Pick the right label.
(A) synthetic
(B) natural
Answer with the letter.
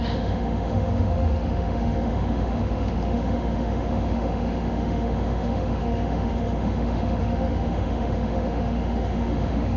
A